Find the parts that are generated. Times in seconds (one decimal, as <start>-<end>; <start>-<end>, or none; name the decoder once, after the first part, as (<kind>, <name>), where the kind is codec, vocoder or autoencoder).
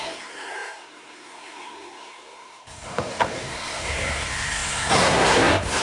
0.0-5.8 (codec, SNAC)